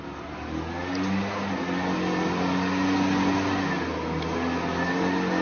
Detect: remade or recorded recorded